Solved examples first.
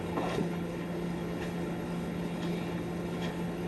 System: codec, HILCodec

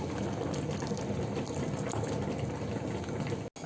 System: none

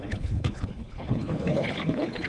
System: codec, HILCodec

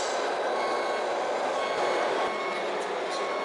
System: none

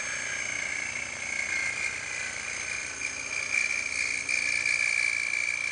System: none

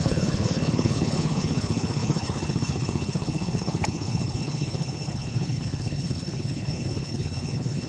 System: codec, HILCodec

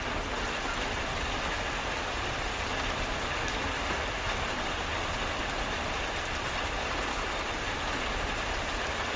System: none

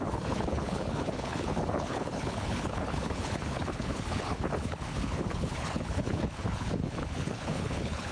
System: codec, HILCodec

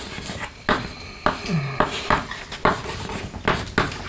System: none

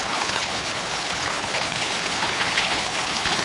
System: codec, HILCodec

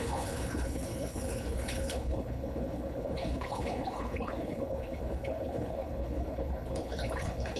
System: codec, HILCodec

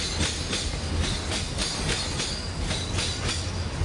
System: none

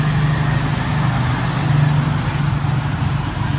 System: none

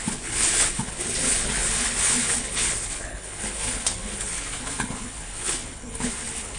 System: codec, HILCodec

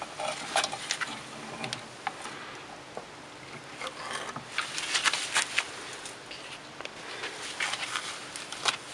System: none